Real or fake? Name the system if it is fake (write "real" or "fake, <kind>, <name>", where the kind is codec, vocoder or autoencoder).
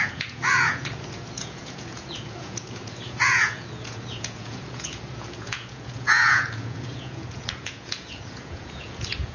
fake, vocoder, Vocos